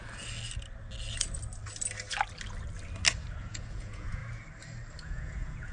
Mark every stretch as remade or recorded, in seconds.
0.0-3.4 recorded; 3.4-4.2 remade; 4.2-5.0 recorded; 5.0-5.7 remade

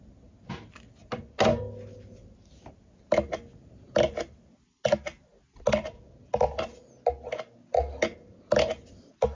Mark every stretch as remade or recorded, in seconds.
0.0-9.3 recorded

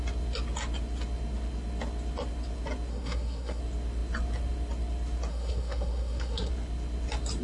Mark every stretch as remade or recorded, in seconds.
0.0-2.9 recorded; 2.9-3.6 remade; 3.6-5.3 recorded; 5.3-6.5 remade; 6.5-7.4 recorded

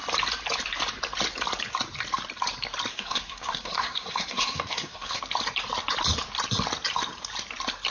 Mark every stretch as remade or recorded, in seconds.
0.0-2.9 recorded; 2.9-5.2 remade; 5.2-7.9 recorded

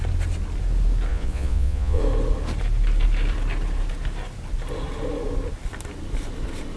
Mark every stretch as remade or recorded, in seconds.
0.0-1.1 recorded; 1.1-2.0 remade; 2.0-6.8 recorded

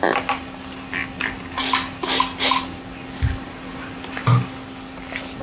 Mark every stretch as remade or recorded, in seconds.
0.0-5.4 recorded

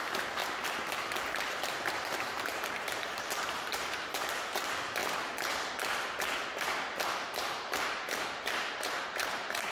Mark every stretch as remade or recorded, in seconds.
0.0-0.4 remade; 0.4-1.3 recorded; 1.3-5.0 remade; 5.0-7.3 recorded; 7.3-9.7 remade